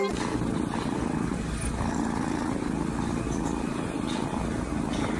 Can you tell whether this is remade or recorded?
recorded